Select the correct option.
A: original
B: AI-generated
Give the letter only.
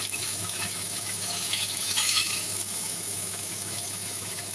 B